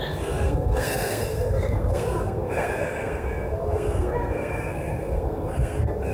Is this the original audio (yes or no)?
no